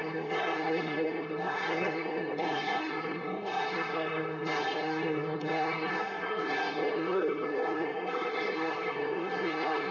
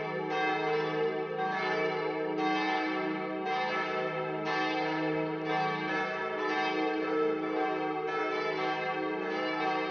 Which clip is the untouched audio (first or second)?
second